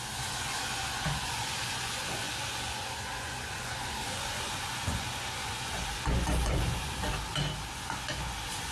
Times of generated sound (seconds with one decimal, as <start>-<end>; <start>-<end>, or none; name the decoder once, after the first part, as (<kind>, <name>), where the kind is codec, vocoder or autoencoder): 0.0-7.1 (vocoder, Vocos); 7.7-8.7